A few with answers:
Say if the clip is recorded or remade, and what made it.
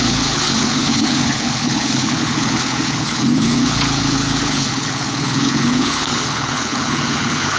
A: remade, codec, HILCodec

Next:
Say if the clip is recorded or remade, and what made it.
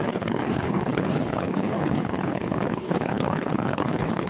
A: remade, codec, HILCodec